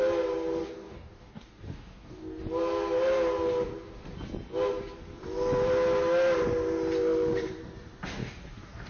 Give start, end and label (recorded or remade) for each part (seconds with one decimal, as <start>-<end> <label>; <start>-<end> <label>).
0.0-0.6 recorded; 0.6-2.4 remade; 2.4-8.2 recorded; 8.2-8.9 remade